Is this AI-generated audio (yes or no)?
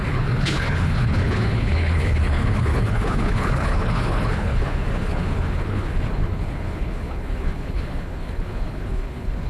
yes